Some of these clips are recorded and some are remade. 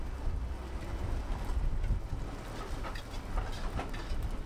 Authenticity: recorded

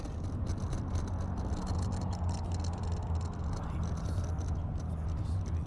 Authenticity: recorded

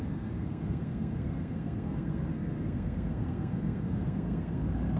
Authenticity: remade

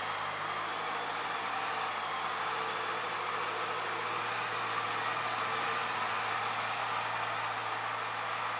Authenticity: recorded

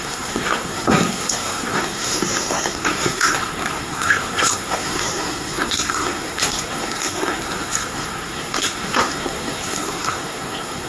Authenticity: remade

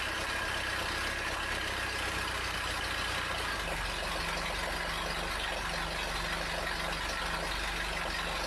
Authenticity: recorded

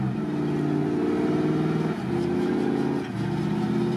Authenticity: recorded